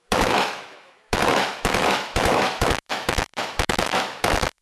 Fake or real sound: fake